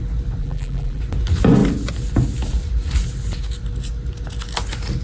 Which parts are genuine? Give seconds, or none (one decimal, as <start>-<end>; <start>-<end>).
0.0-0.4; 1.0-5.0